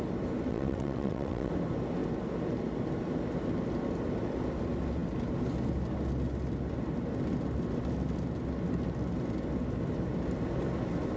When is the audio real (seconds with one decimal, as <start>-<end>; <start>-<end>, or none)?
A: 0.0-0.5; 1.5-11.2